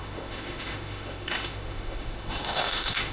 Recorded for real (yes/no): no